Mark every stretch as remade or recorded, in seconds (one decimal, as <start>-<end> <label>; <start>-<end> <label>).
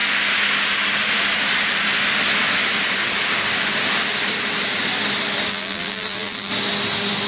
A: 0.0-5.5 recorded; 5.5-6.5 remade; 6.5-7.3 recorded